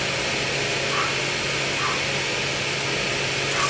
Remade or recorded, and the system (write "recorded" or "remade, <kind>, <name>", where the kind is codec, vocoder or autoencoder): recorded